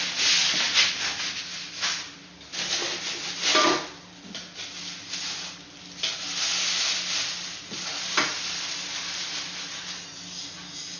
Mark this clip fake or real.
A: real